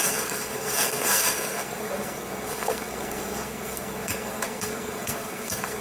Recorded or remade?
remade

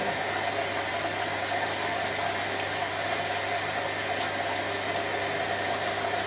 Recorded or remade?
recorded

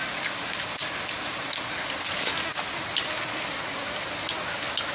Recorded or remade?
recorded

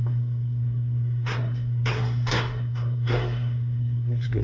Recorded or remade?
remade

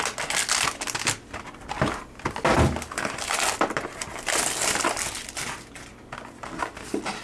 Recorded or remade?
recorded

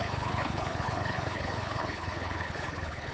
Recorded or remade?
remade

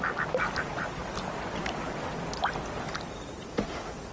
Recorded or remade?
recorded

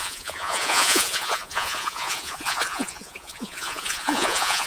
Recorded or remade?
remade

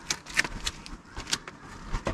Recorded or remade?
recorded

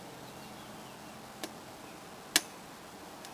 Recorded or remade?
recorded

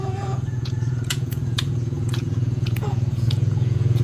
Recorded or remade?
remade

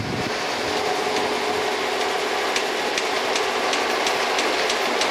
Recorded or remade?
recorded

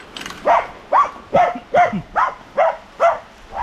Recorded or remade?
recorded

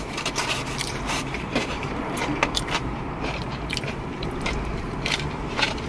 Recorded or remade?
remade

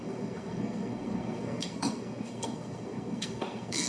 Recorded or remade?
remade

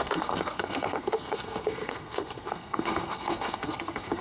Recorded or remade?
remade